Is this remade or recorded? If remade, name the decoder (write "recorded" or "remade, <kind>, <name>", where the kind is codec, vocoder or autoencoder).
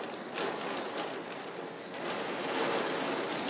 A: recorded